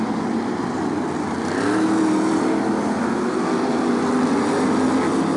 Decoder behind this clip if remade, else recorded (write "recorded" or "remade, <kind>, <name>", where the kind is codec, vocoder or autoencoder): recorded